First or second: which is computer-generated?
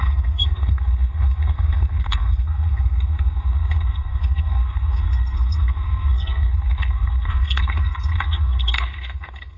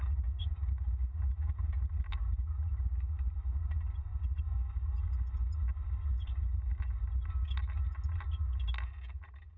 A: first